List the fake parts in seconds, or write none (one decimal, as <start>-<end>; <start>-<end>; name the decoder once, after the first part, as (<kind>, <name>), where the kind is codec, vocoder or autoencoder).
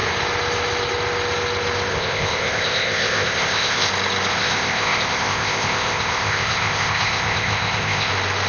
1.9-3.9 (codec, ZipCodec); 4.3-8.1